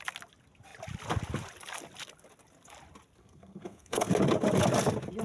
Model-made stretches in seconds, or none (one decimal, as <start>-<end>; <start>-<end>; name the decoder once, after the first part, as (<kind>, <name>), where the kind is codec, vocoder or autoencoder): 3.2-4.1 (codec, SNAC)